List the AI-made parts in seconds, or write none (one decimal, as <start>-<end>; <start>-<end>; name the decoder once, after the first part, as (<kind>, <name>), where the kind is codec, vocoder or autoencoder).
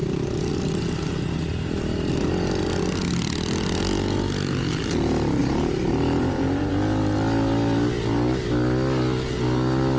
0.0-0.8 (vocoder, BigVGAN v2); 1.5-2.3; 5.4-6.7